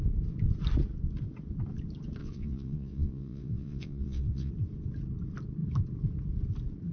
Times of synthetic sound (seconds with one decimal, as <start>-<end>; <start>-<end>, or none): 2.2-4.5